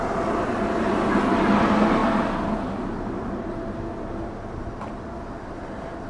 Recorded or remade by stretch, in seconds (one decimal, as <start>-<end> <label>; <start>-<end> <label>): 0.0-6.1 recorded